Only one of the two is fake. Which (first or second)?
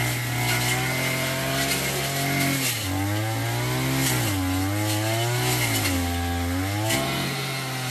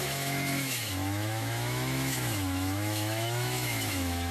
second